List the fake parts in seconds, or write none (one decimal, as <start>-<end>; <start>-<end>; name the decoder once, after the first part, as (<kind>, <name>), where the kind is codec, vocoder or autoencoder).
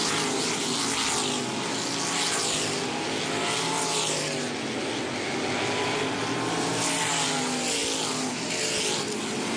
none